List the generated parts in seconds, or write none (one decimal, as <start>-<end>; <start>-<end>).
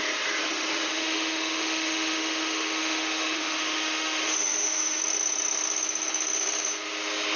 0.9-5.0